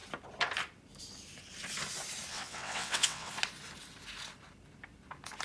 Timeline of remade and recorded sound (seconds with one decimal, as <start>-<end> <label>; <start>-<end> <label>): 0.0-2.3 recorded; 2.3-3.3 remade; 3.3-5.4 recorded